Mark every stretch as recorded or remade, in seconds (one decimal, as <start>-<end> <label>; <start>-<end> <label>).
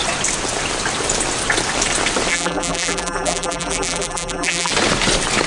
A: 0.0-2.3 recorded; 2.3-4.7 remade; 4.7-5.5 recorded